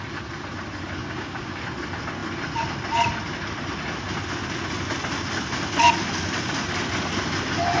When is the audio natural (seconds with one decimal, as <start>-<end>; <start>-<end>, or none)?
0.0-1.0; 1.6-7.8